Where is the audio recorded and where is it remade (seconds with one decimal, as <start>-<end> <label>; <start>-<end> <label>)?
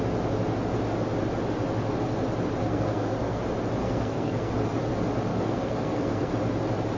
0.0-2.6 recorded; 2.6-3.4 remade; 3.4-3.8 recorded; 3.8-4.5 remade; 4.5-5.3 recorded; 5.3-6.3 remade; 6.3-7.0 recorded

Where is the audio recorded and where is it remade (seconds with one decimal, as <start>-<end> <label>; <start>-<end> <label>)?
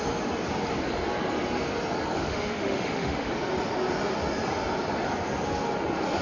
0.0-2.2 recorded; 2.2-3.3 remade; 3.3-6.2 recorded